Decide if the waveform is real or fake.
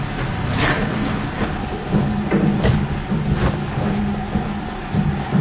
real